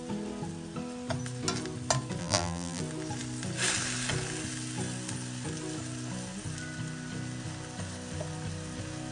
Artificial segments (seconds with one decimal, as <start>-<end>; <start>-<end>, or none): 2.2-2.8